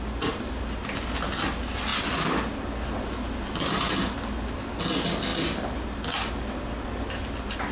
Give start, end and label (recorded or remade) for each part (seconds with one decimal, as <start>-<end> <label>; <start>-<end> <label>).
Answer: 0.0-7.7 recorded